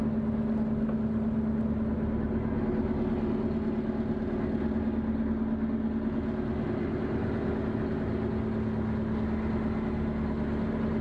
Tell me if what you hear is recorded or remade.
recorded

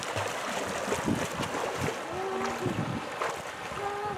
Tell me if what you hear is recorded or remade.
recorded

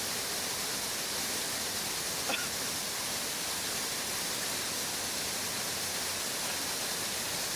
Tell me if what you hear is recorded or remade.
recorded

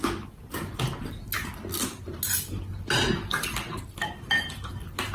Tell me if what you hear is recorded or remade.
recorded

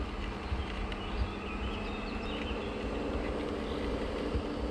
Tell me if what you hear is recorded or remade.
recorded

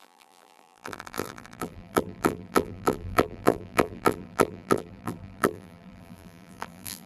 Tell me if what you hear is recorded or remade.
remade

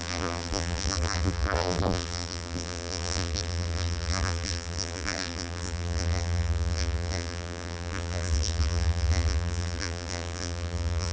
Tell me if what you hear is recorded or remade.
remade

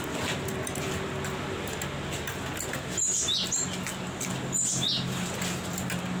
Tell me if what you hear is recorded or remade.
recorded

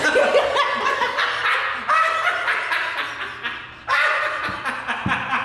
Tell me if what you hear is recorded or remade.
recorded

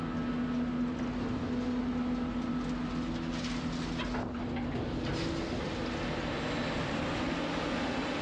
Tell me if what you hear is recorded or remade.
recorded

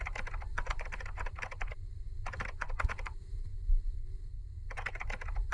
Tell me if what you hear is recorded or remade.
remade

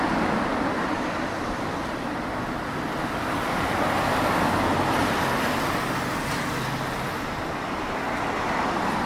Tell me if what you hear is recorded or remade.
recorded